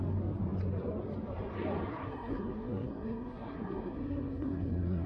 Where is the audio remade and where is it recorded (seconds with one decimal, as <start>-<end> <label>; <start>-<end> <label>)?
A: 0.0-1.9 recorded; 1.9-5.1 remade